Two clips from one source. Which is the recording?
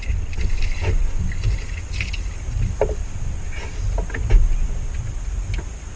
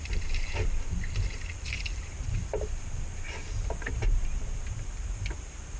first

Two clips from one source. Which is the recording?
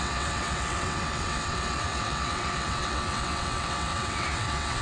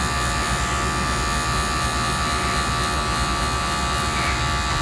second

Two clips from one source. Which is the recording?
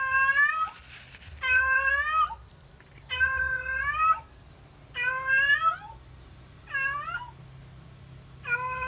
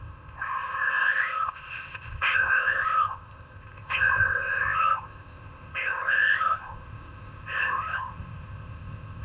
first